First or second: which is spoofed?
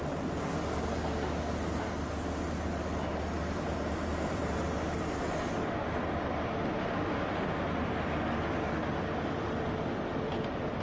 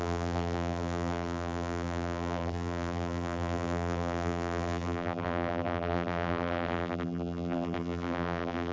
second